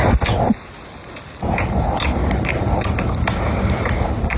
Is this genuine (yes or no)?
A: yes